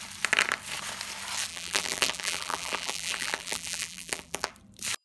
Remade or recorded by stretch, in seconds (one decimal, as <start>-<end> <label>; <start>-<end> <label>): 0.0-1.5 recorded; 1.5-4.5 remade; 4.5-5.0 recorded